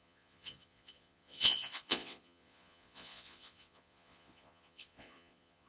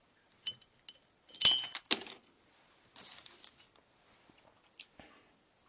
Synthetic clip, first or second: first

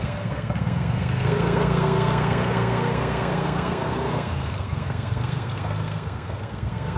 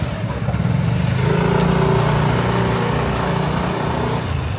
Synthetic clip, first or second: first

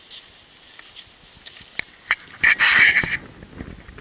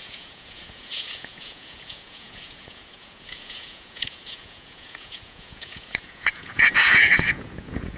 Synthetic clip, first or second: second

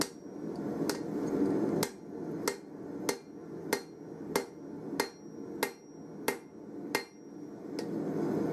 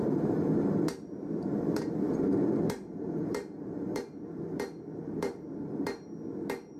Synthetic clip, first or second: second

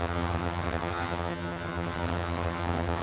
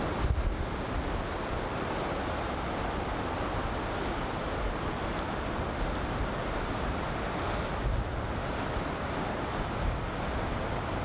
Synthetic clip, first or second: first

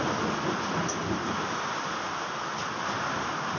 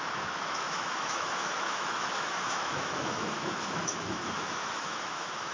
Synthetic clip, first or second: second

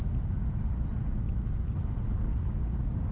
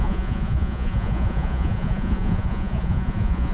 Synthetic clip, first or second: second